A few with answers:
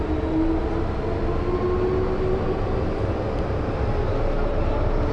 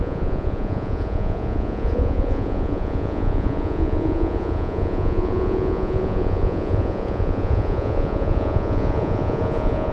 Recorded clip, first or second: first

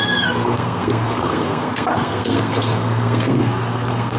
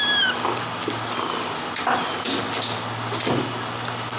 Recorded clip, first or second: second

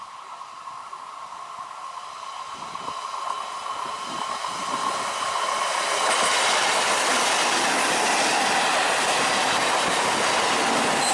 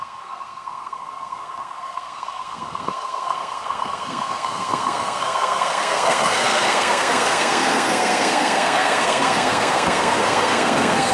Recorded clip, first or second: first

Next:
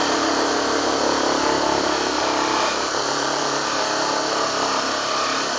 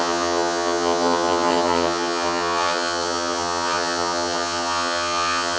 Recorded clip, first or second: first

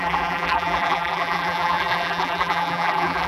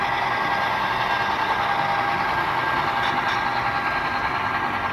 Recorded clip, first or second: second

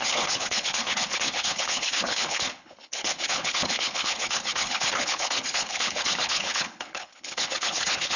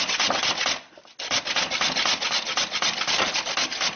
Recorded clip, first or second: second